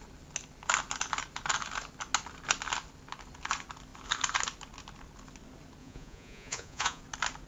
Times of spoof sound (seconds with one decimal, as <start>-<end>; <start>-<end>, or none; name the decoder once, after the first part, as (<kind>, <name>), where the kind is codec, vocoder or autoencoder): 5.8-7.0 (vocoder, Vocos)